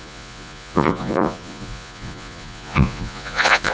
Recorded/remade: remade